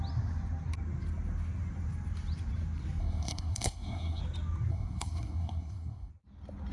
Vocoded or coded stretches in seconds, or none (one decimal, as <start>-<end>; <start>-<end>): 3.0-4.2; 4.7-6.1